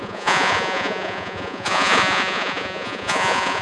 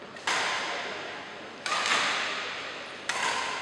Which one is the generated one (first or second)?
first